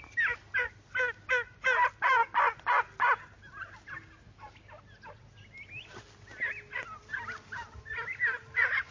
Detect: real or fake real